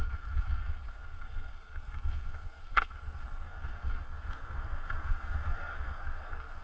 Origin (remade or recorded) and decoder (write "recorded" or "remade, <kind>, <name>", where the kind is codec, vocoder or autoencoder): remade, codec, SNAC